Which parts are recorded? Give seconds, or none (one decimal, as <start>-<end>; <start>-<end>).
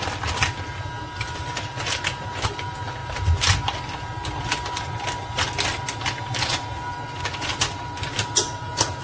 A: 0.0-9.0